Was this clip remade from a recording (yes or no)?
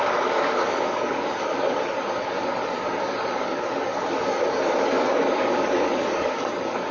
yes